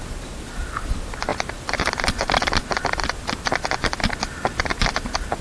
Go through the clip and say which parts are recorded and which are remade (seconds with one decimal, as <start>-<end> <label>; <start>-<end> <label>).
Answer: 0.0-5.4 recorded